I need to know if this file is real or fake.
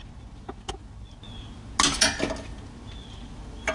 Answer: real